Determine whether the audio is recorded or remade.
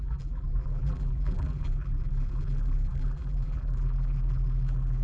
remade